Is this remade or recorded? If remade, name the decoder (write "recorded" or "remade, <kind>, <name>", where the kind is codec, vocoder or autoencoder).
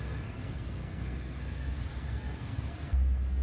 remade, codec, SNAC